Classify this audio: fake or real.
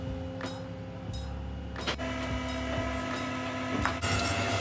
real